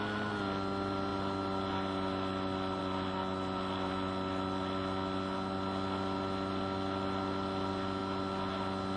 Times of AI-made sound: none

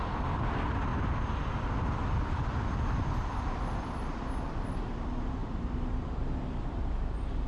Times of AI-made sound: 0.9-4.8 (vocoder, BigVGAN v2); 5.4-6.9

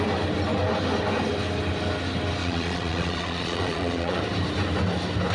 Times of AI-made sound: 2.4-4.2 (vocoder, Vocos)